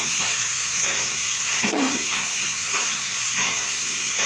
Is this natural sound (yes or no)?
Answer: no